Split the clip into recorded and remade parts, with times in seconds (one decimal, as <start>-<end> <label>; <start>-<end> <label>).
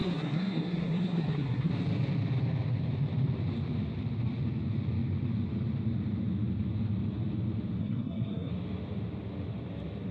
0.0-1.7 remade; 1.7-7.8 recorded; 7.8-8.5 remade; 8.5-10.1 recorded